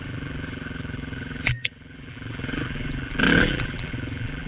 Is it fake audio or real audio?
fake